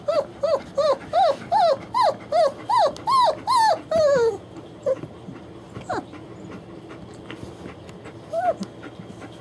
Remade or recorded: recorded